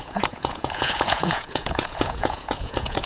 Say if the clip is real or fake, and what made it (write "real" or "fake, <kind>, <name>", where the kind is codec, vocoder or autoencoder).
fake, vocoder, Vocos